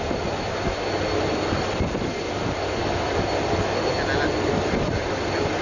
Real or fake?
real